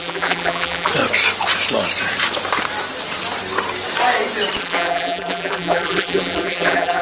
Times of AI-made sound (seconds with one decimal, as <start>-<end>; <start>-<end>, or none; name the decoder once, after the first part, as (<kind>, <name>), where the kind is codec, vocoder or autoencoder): 0.0-0.9 (vocoder, BigVGAN v2); 4.6-7.0